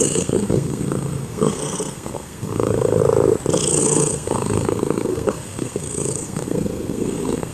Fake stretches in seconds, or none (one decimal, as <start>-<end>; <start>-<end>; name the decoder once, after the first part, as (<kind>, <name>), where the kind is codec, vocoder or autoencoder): 0.0-3.0 (codec, SNAC); 3.8-7.5